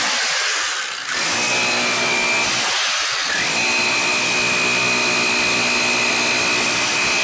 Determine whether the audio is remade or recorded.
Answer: recorded